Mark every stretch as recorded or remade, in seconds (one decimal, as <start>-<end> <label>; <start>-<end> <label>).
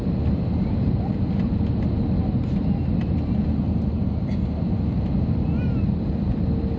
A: 0.0-6.8 recorded